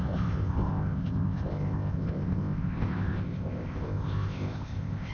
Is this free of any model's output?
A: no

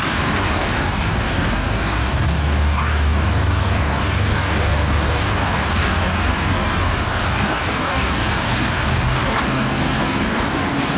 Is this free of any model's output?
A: no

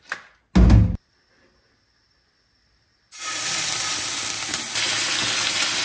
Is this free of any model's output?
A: yes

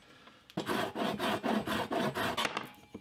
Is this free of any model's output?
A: yes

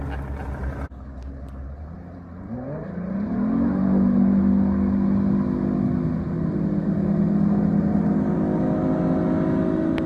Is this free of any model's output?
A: yes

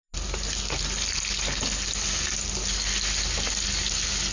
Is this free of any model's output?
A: yes